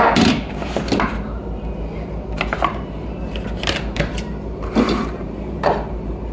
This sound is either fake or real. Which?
fake